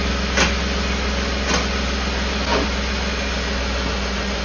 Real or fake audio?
real